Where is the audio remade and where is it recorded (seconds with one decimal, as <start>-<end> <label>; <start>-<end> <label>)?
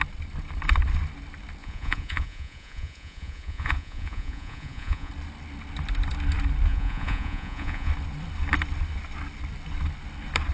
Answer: 0.0-1.6 recorded; 1.6-5.1 remade; 5.1-6.7 recorded; 6.7-7.9 remade; 7.9-10.5 recorded